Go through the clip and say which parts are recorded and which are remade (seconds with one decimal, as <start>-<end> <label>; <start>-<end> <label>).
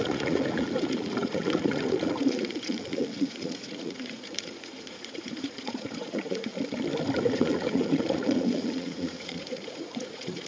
0.0-6.5 remade; 6.5-7.2 recorded; 7.2-10.5 remade